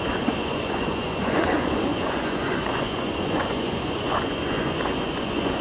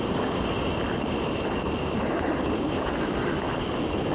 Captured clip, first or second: second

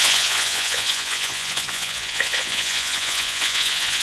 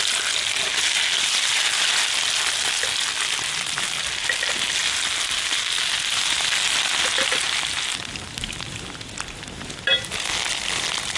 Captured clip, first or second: second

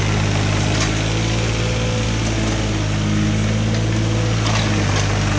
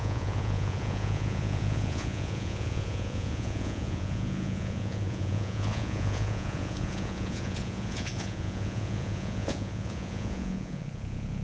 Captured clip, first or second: first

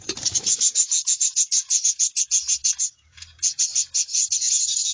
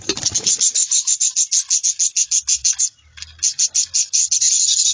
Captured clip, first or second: second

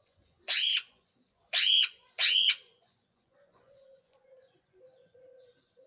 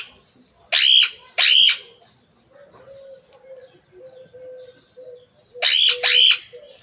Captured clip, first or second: second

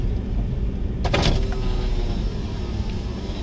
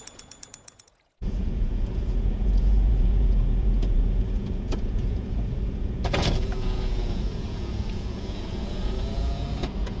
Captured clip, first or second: first